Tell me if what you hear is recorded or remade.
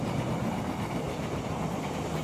recorded